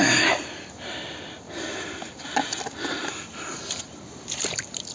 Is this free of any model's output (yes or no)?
yes